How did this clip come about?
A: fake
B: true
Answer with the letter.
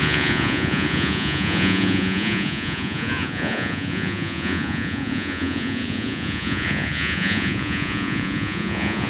A